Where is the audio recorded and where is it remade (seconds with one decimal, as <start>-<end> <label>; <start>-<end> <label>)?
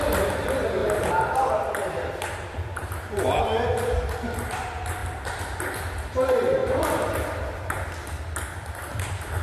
0.0-0.8 recorded; 0.8-3.4 remade; 3.4-6.6 recorded; 6.6-7.8 remade; 7.8-9.4 recorded